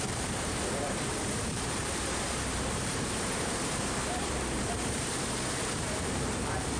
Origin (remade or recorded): remade